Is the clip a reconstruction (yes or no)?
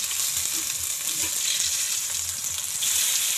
no